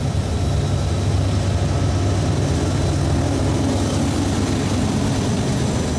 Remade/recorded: recorded